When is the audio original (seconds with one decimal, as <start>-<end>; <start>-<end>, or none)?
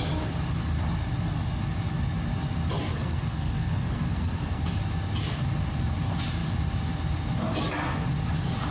0.0-2.9; 4.6-8.7